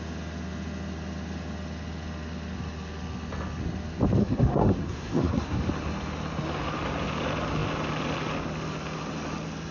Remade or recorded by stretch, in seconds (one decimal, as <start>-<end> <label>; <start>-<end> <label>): 0.0-4.2 recorded; 4.2-5.6 remade; 5.6-9.7 recorded